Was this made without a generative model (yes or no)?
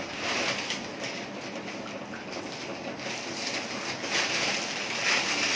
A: yes